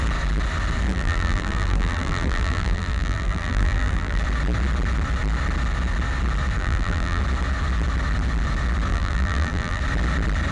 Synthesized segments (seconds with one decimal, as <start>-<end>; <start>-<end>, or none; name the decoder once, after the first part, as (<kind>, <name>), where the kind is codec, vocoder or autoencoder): 0.9-4.2 (vocoder, BigVGAN v2); 6.6-7.2; 8.9-9.8